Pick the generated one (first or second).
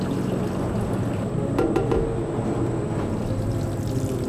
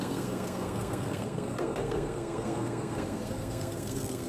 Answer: second